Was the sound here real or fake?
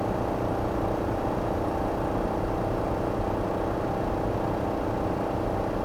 real